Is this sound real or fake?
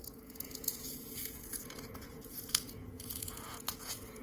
fake